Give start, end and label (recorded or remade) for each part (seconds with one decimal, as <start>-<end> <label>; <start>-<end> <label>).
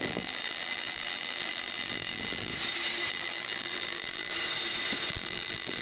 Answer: 0.0-2.5 remade; 2.5-3.1 recorded; 3.1-4.3 remade; 4.3-5.1 recorded; 5.1-5.8 remade